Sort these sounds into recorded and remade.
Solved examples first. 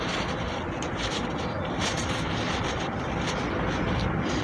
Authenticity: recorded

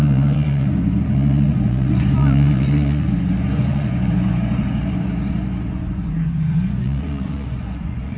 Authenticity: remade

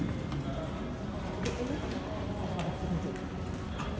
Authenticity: recorded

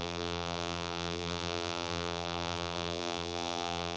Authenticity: remade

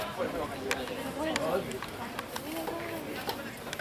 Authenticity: recorded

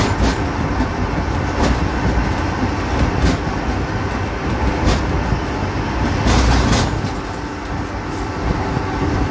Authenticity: recorded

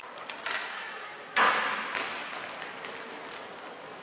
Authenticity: recorded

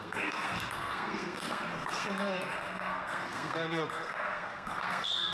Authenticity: remade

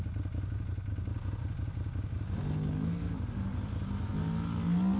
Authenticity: recorded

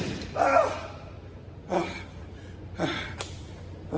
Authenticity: recorded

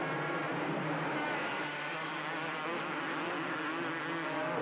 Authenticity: recorded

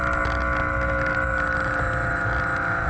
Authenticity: recorded